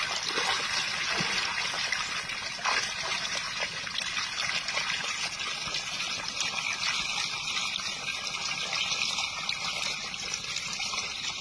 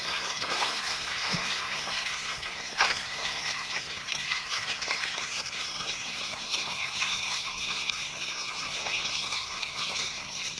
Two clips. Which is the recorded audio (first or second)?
first